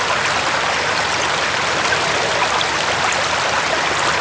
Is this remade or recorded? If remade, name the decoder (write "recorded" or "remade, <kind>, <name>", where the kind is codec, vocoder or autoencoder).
recorded